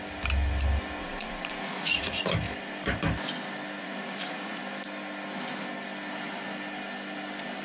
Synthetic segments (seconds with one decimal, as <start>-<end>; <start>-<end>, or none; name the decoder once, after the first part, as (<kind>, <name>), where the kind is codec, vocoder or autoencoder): 1.0-2.2 (vocoder, Vocos); 3.8-4.6